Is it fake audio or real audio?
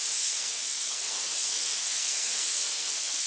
fake